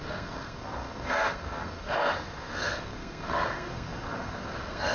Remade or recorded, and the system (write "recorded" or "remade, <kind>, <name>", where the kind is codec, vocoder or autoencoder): remade, codec, SNAC